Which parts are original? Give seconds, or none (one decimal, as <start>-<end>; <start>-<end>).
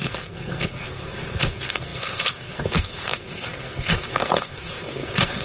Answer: none